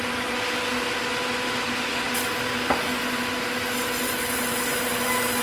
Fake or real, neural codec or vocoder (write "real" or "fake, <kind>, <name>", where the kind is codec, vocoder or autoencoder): real